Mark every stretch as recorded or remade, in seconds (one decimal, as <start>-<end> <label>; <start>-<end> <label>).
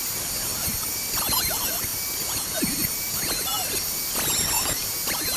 0.0-0.5 recorded; 0.5-1.1 remade; 1.1-5.4 recorded